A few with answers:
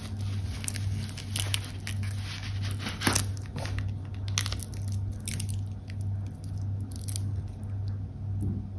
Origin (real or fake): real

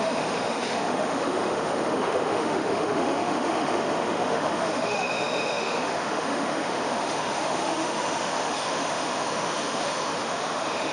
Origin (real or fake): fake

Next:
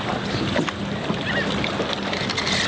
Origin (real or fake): real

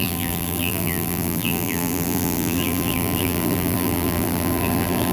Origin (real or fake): fake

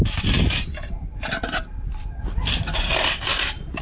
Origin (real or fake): real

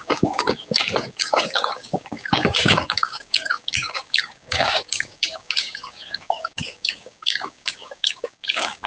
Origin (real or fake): fake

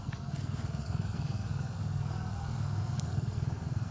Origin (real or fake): fake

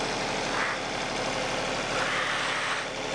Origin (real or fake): real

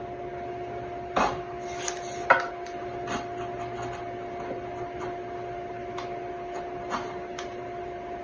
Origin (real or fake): real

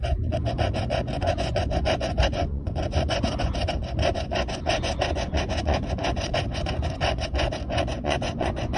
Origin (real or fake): fake